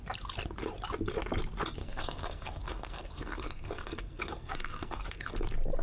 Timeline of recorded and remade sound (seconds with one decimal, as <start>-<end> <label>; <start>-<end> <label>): 0.0-1.8 recorded; 1.8-5.3 remade; 5.3-5.8 recorded

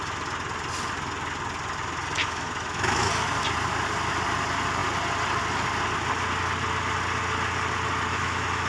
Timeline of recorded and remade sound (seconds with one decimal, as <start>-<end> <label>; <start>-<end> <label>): 0.0-2.2 recorded; 2.2-3.1 remade; 3.1-8.1 recorded; 8.1-8.7 remade

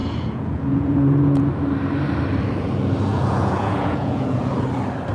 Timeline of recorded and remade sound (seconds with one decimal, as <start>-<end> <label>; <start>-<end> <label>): 0.0-1.5 remade; 1.5-3.1 recorded; 3.1-4.5 remade; 4.5-5.1 recorded

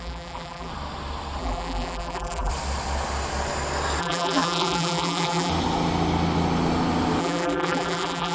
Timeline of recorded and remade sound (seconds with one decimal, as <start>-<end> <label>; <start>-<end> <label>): 0.0-0.7 remade; 0.7-1.4 recorded; 1.4-2.5 remade; 2.5-4.0 recorded; 4.0-5.5 remade; 5.5-7.2 recorded; 7.2-8.3 remade

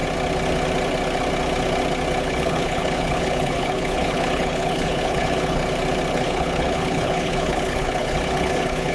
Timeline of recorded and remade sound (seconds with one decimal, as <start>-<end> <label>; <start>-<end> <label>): 0.0-2.2 recorded; 2.2-5.6 remade; 5.6-6.1 recorded; 6.1-8.9 remade

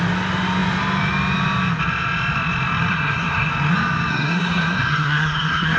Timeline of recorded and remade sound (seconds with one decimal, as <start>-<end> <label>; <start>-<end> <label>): 0.0-2.9 recorded; 2.9-3.5 remade; 3.5-4.1 recorded; 4.1-5.8 remade